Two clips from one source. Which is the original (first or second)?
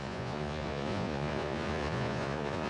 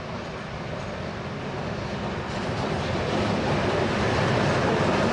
second